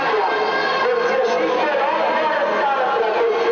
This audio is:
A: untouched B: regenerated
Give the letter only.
A